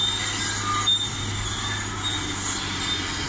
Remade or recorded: recorded